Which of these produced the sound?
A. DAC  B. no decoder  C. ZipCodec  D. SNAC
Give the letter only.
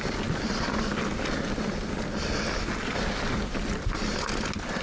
B